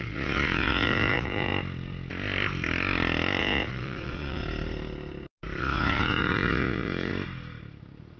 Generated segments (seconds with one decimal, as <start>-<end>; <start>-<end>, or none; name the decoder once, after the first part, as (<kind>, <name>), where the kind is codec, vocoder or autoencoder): 0.0-1.5 (vocoder, Vocos); 3.4-4.4; 5.6-7.1